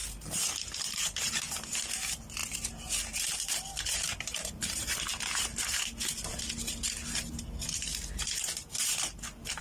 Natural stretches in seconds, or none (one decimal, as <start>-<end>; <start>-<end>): 0.0-9.6